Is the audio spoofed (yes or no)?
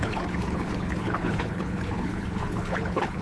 yes